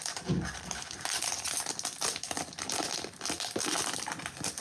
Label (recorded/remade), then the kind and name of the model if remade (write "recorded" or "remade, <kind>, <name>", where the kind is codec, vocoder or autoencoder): recorded